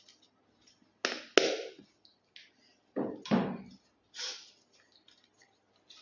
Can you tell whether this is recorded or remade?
recorded